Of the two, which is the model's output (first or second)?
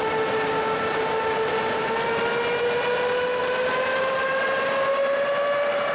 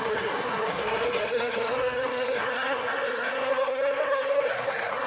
second